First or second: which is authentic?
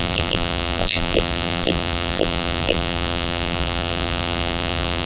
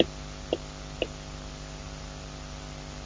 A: second